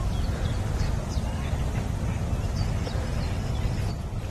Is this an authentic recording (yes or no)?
yes